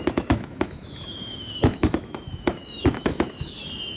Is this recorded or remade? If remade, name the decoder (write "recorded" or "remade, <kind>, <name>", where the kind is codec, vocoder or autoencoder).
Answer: remade, autoencoder, DAC-VAE